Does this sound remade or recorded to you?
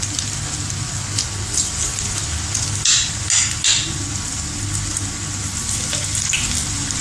recorded